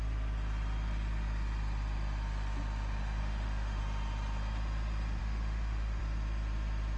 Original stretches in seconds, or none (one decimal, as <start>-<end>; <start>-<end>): 0.0-3.2; 3.8-5.2; 6.0-7.0